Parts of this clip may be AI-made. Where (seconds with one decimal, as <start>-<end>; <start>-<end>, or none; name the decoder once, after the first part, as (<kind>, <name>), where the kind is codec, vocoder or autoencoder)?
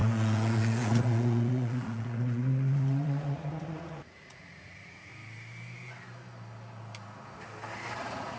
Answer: 0.0-5.1 (vocoder, Vocos); 8.0-8.4